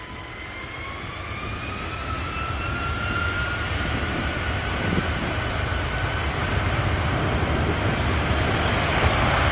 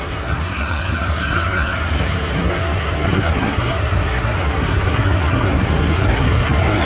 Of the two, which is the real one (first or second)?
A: first